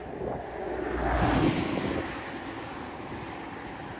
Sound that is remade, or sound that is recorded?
recorded